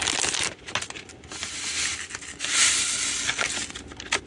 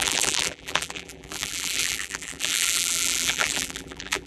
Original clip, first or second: first